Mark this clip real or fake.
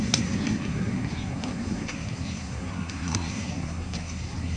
fake